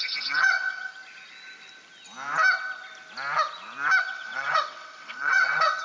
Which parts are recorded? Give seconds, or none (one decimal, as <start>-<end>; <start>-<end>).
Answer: 0.9-4.0

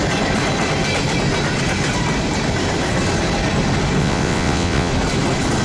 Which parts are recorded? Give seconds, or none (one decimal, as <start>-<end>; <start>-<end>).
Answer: 0.0-4.0; 4.9-5.6